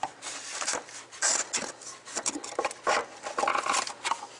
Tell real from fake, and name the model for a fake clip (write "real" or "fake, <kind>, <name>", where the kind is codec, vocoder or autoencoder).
real